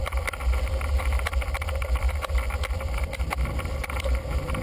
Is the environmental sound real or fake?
fake